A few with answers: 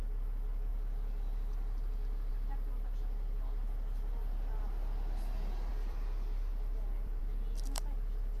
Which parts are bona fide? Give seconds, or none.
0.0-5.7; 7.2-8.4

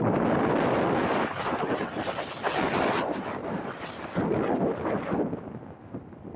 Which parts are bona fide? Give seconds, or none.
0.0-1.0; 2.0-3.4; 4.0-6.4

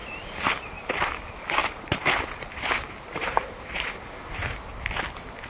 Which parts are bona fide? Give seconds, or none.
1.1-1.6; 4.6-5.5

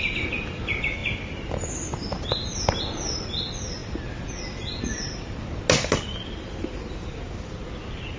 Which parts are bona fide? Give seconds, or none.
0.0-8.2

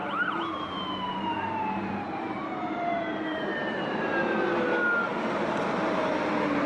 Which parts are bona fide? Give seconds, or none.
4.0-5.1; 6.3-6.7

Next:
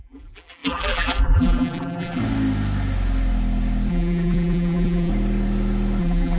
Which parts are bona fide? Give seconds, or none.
2.2-3.9; 5.1-6.0

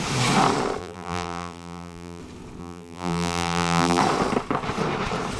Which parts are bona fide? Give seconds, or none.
0.0-0.8; 2.2-2.6; 4.0-5.4